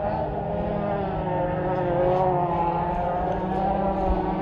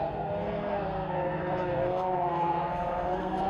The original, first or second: first